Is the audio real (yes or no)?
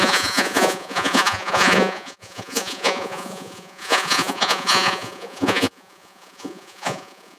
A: no